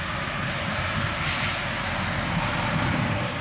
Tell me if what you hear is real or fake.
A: real